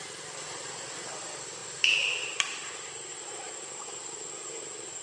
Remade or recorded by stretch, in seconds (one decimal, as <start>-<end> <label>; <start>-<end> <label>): 0.0-5.0 recorded